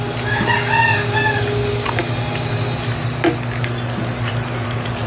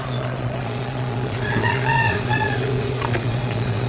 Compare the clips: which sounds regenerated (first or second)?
second